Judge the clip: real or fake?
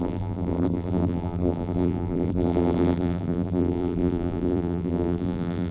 fake